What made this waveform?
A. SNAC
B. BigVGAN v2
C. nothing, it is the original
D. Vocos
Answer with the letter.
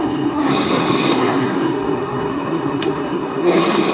A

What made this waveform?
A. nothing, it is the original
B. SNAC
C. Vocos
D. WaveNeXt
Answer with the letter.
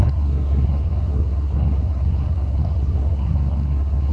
B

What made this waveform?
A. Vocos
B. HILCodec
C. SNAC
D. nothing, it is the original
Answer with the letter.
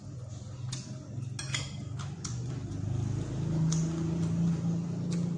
D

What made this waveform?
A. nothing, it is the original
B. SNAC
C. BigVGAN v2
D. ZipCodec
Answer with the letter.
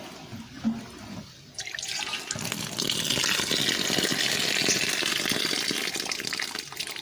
A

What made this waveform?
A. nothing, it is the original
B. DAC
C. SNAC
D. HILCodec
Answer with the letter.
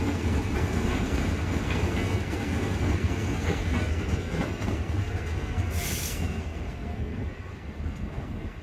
C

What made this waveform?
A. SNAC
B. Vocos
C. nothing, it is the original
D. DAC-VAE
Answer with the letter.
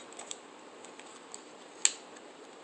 C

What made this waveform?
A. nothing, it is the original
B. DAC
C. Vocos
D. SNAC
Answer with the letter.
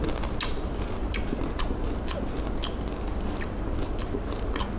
A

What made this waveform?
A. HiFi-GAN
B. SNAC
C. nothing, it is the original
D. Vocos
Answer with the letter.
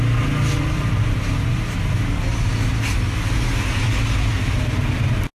C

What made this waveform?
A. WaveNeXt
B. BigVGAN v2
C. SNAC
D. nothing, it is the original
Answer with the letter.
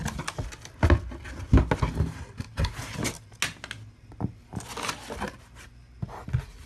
D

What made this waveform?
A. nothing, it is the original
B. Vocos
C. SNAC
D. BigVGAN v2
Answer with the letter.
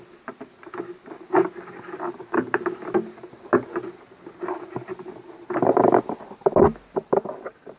A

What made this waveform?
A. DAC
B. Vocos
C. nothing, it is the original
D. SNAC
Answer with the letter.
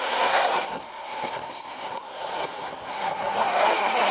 D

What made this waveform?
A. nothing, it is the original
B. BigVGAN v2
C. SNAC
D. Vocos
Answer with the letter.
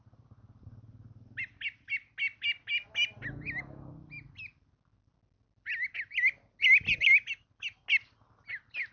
A